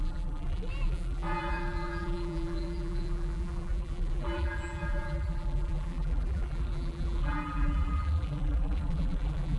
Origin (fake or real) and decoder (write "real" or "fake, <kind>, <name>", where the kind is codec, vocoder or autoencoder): fake, vocoder, BigVGAN v2